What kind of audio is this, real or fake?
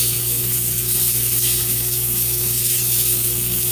fake